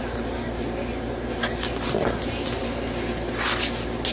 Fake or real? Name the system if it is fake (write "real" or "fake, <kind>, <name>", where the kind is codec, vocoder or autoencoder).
real